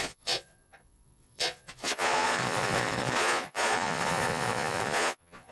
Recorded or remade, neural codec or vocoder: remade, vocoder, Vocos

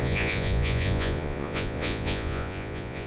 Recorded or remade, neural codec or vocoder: remade, vocoder, Vocos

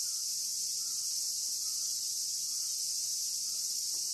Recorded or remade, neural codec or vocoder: remade, vocoder, Vocos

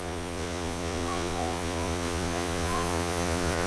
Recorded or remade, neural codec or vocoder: remade, vocoder, Vocos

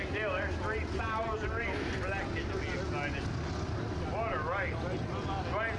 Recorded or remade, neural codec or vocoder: recorded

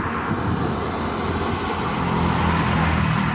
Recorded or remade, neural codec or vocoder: recorded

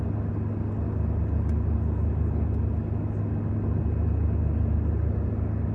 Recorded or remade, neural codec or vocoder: recorded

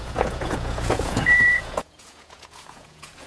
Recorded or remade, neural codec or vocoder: remade, vocoder, Vocos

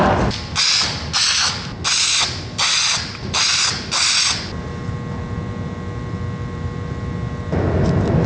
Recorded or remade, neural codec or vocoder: recorded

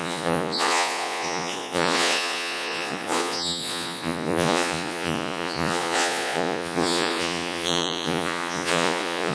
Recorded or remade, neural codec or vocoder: remade, vocoder, Vocos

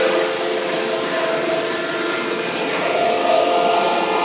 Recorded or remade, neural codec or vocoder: recorded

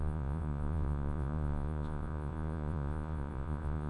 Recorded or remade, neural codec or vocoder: remade, vocoder, Vocos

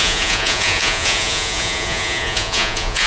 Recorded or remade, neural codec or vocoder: remade, vocoder, Vocos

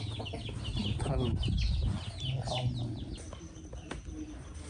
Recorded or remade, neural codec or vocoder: recorded